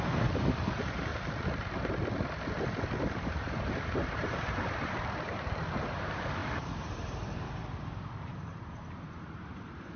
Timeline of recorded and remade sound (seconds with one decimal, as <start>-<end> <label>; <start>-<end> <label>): 0.0-1.1 remade; 1.1-3.1 recorded; 3.1-10.0 remade